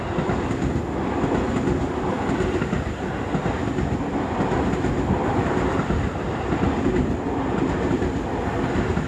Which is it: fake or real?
real